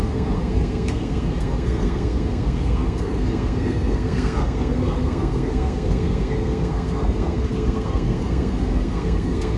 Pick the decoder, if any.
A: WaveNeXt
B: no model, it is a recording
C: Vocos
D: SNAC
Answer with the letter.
D